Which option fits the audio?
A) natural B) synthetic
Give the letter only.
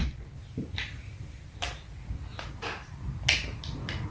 A